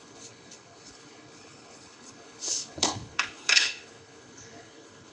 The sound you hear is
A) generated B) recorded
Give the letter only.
A